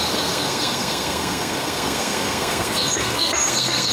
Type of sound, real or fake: fake